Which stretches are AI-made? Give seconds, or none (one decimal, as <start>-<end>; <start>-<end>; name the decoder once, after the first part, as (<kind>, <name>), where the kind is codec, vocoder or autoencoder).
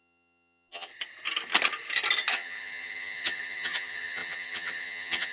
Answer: 0.0-0.9 (vocoder, HiFi-GAN); 2.3-5.3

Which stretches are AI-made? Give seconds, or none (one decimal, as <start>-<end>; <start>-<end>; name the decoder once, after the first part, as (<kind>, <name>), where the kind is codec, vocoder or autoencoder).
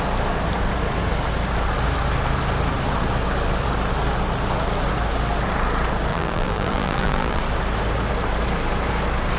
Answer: 6.1-7.4 (vocoder, BigVGAN v2)